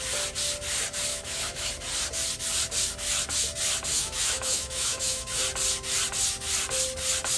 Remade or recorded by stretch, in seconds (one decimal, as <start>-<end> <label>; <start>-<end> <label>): 0.0-1.1 recorded; 1.1-1.7 remade; 1.7-3.9 recorded; 3.9-5.4 remade; 5.4-7.4 recorded